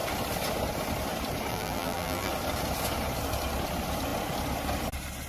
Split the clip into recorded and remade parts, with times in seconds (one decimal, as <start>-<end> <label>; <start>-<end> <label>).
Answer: 0.0-1.5 recorded; 1.5-2.3 remade; 2.3-5.3 recorded